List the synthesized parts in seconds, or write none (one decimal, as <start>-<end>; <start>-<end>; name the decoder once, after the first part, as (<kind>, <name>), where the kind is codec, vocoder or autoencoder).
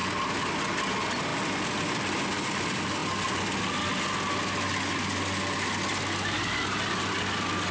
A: none